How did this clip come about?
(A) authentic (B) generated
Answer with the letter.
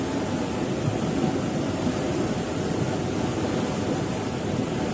A